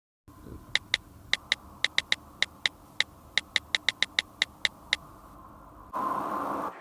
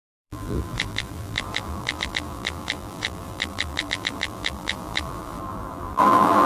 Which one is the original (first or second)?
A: first